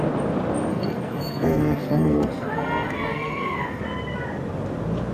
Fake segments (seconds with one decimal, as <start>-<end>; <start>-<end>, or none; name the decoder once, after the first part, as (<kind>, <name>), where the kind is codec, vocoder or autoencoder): 0.7-3.8 (codec, SNAC)